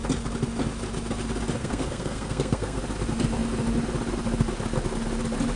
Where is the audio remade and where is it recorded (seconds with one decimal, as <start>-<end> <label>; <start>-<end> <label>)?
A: 0.0-1.6 recorded; 1.6-2.8 remade; 2.8-5.6 recorded